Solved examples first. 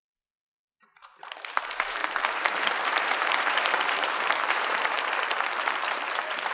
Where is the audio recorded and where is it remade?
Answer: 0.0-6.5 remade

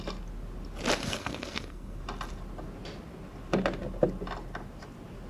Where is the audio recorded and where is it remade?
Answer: 0.0-1.0 recorded; 1.0-2.0 remade; 2.0-5.3 recorded

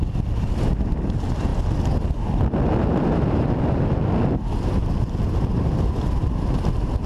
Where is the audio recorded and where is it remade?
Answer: 0.0-7.1 recorded

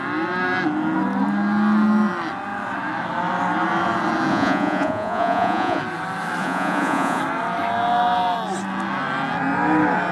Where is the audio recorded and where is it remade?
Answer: 0.0-4.3 recorded; 4.3-5.8 remade; 5.8-6.4 recorded; 6.4-7.2 remade; 7.2-10.1 recorded

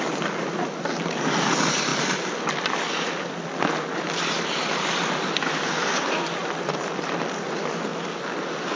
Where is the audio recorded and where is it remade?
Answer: 0.0-8.8 recorded

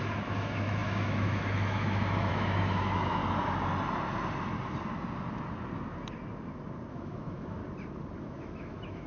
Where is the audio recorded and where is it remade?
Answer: 0.0-3.2 remade; 3.2-6.9 recorded; 6.9-7.6 remade; 7.6-8.2 recorded; 8.2-9.1 remade

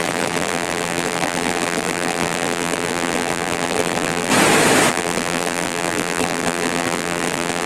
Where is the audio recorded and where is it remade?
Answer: 0.0-4.3 remade; 4.3-4.9 recorded; 4.9-7.7 remade

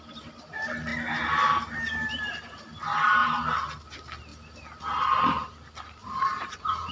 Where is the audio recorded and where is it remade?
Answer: 0.0-6.0 recorded; 6.0-6.9 remade